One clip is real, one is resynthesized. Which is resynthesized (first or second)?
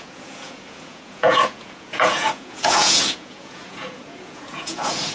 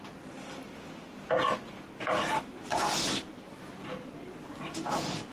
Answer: first